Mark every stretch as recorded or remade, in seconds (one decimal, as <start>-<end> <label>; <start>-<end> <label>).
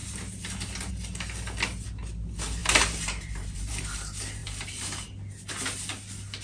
0.0-0.9 remade; 0.9-2.6 recorded; 2.6-3.8 remade; 3.8-4.4 recorded; 4.4-5.1 remade; 5.1-6.4 recorded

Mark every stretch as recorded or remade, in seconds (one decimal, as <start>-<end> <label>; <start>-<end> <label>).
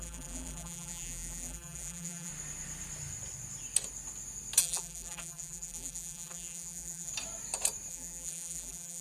0.0-2.3 remade; 2.3-4.6 recorded; 4.6-7.1 remade; 7.1-7.9 recorded; 7.9-9.0 remade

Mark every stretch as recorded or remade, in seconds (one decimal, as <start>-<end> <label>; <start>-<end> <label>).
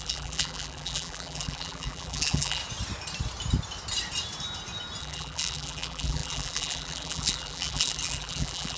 0.0-2.6 remade; 2.6-5.0 recorded; 5.0-8.8 remade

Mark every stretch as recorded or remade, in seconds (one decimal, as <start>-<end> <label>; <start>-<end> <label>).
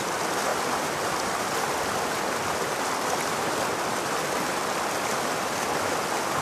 0.0-0.5 recorded; 0.5-4.3 remade; 4.3-6.4 recorded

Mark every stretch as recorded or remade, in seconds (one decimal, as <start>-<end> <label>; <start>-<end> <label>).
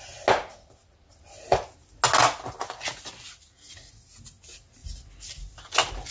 0.0-6.1 recorded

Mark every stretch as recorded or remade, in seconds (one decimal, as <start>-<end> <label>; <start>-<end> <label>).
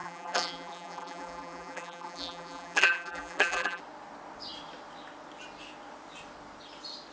0.0-3.8 remade; 3.8-7.1 recorded